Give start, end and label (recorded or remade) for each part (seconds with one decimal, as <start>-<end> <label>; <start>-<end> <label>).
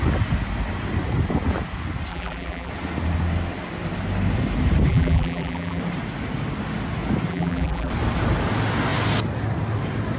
0.0-2.1 recorded; 2.1-2.7 remade; 2.7-4.9 recorded; 4.9-5.8 remade; 5.8-7.3 recorded; 7.3-7.9 remade; 7.9-10.2 recorded